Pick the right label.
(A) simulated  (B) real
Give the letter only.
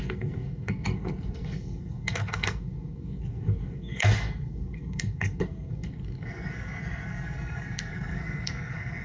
A